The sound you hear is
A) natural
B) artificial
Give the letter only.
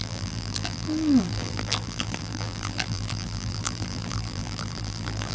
B